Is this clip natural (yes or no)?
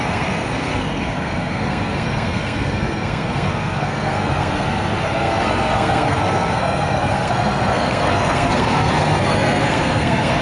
no